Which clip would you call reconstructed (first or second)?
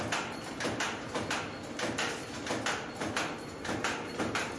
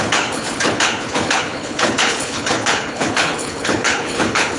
second